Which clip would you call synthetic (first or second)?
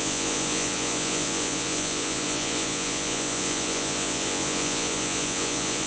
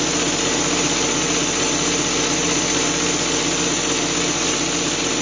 first